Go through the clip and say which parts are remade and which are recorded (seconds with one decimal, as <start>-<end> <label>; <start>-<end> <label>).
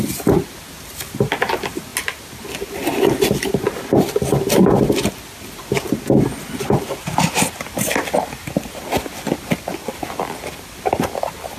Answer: 0.0-11.6 recorded